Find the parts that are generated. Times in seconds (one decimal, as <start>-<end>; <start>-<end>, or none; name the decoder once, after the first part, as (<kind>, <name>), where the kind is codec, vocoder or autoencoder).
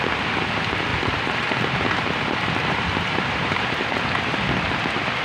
0.9-4.0 (vocoder, BigVGAN v2)